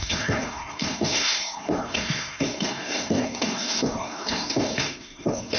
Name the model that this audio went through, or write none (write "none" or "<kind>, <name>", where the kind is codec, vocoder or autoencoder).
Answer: codec, SNAC